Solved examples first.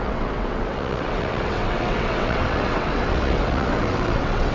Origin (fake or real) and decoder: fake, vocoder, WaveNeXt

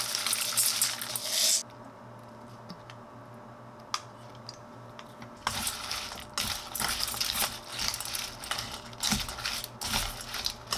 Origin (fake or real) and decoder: real